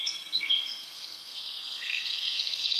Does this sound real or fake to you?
fake